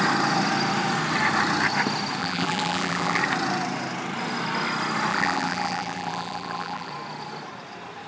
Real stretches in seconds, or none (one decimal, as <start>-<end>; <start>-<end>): 0.0-2.2; 3.2-5.1; 6.9-8.1

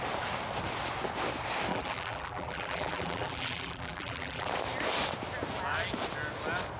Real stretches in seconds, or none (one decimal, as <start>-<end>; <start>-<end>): 0.0-1.7; 4.5-6.8

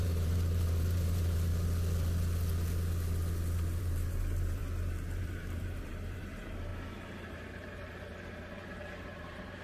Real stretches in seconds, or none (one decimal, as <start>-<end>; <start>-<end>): 1.5-3.8; 4.6-5.2; 6.7-7.3

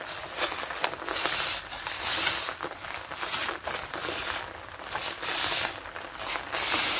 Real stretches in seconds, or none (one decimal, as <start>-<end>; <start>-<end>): 0.0-7.0